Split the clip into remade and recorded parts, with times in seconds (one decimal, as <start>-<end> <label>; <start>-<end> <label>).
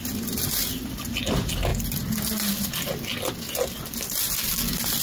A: 0.0-5.0 recorded